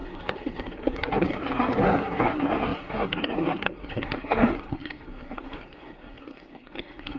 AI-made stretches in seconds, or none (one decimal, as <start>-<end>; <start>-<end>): 0.0-7.2